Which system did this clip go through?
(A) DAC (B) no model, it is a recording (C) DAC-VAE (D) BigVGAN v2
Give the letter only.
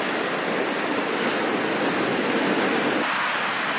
B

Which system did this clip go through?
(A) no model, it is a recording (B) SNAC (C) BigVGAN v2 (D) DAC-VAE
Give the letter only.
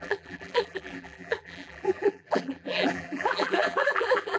C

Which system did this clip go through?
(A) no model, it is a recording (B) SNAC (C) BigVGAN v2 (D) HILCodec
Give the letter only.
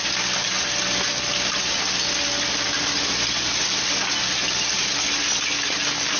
A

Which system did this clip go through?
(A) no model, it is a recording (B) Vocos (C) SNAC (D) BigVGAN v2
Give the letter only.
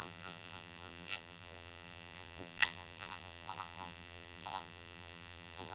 D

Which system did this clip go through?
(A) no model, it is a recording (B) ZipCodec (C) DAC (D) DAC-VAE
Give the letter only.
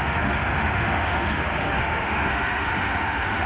D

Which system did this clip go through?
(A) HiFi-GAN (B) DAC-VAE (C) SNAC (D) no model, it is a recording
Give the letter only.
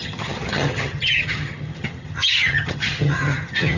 A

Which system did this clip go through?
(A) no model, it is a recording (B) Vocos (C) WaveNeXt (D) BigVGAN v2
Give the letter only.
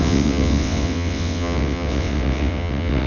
C